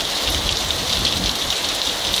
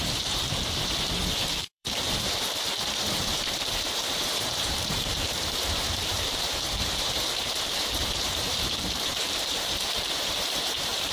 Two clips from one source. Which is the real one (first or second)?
first